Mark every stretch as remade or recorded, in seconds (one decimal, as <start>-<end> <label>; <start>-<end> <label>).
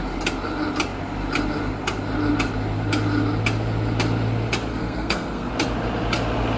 0.0-4.7 recorded; 4.7-5.5 remade; 5.5-6.6 recorded